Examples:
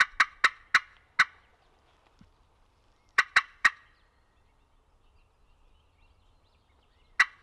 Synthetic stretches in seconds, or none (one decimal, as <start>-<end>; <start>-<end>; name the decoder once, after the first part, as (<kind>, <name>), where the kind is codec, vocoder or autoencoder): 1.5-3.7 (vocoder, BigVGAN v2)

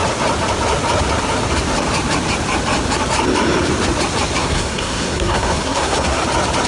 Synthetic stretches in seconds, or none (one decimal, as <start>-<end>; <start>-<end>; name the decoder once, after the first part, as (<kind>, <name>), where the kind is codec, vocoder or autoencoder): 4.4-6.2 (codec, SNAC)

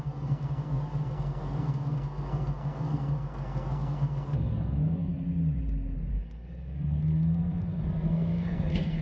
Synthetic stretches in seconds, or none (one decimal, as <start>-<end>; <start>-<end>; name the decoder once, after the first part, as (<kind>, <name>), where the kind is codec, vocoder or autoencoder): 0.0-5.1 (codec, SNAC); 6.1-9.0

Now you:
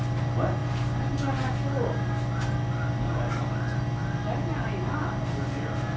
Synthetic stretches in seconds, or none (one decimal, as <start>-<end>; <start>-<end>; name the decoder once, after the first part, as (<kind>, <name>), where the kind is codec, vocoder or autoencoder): none

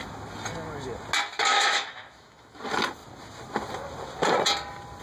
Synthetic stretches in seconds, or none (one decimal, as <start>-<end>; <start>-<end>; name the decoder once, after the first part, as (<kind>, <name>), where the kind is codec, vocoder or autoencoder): 1.5-2.6 (autoencoder, DAC-VAE)

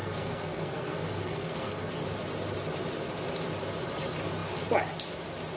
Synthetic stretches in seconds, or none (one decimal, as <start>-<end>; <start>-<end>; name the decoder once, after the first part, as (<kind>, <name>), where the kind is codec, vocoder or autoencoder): 0.0-1.9 (codec, SNAC)